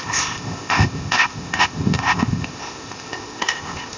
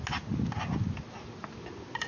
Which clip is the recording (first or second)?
second